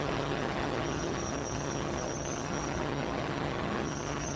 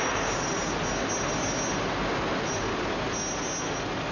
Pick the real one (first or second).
second